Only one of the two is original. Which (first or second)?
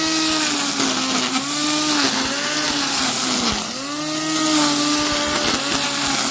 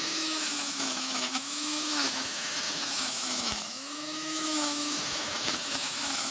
first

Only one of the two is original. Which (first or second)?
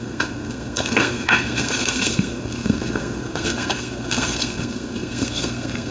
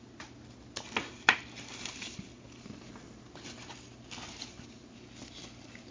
second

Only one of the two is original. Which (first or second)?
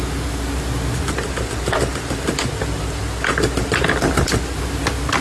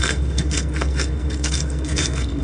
first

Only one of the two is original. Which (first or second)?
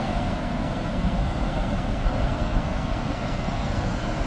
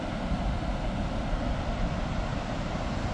second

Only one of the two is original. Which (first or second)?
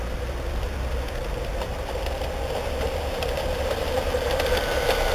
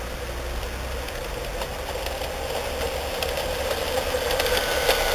second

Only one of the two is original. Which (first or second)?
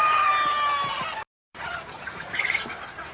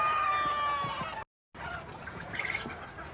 second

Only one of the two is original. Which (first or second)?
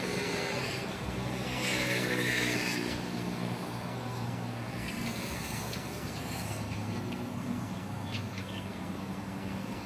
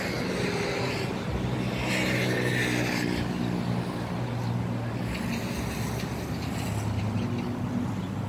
second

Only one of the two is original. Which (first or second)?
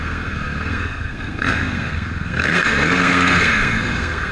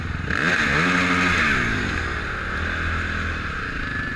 second